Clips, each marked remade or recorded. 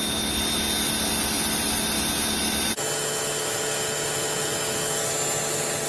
recorded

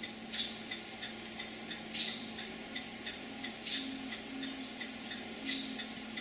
recorded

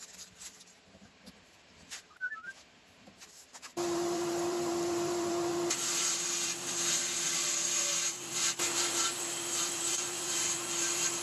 remade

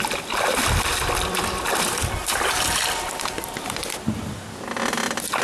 recorded